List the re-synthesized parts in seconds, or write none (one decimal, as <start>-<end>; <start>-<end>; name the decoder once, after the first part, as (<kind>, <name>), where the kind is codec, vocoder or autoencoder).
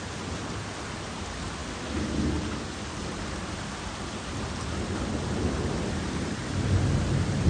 none